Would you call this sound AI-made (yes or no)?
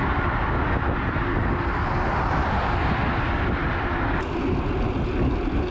no